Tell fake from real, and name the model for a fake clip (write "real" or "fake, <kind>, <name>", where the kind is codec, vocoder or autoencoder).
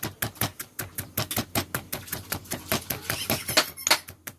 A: real